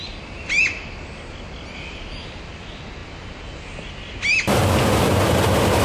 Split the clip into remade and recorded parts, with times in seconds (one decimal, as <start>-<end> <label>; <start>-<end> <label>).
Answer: 0.0-5.8 recorded